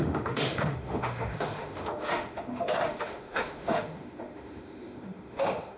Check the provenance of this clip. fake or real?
fake